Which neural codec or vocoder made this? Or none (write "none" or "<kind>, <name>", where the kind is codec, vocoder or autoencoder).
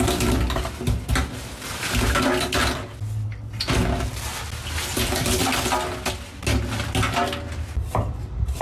none